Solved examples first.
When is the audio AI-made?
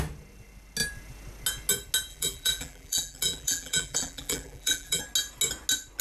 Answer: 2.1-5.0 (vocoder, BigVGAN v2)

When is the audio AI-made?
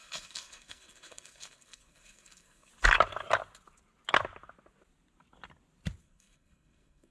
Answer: 0.0-2.7 (codec, SNAC); 6.0-7.1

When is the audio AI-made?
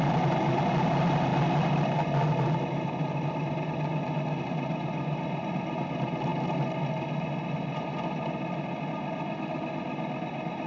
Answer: none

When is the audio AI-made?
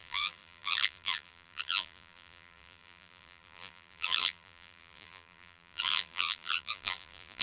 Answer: 0.0-7.4 (vocoder, BigVGAN v2)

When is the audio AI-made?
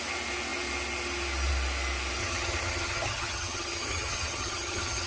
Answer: 2.2-5.1 (vocoder, HiFi-GAN)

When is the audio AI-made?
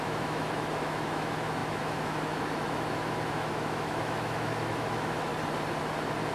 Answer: 0.0-5.3 (autoencoder, DAC-VAE)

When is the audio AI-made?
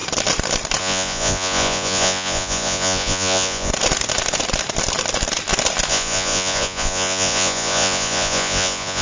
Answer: 0.8-3.7 (vocoder, Vocos); 5.9-9.0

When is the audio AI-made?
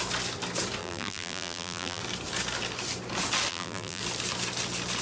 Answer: 0.8-2.0 (vocoder, BigVGAN v2); 3.5-4.0